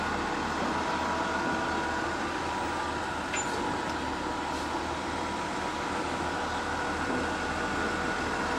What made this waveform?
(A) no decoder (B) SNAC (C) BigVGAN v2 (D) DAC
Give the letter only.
A